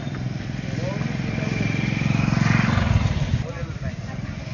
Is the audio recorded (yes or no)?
yes